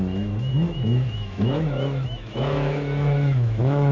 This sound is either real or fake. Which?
fake